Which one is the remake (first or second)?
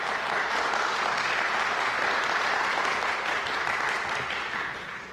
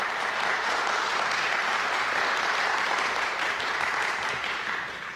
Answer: second